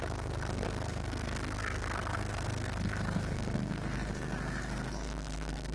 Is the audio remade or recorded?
remade